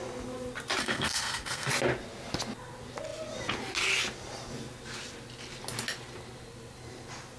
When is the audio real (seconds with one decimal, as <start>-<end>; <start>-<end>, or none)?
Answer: 0.0-0.8; 1.7-7.4